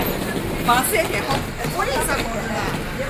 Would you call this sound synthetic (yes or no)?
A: no